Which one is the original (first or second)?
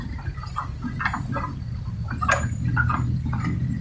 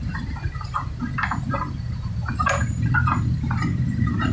first